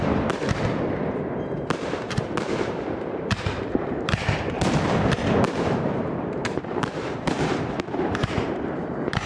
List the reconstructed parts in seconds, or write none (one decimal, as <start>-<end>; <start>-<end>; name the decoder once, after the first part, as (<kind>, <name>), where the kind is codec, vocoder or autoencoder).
0.0-4.2 (vocoder, BigVGAN v2); 5.3-9.3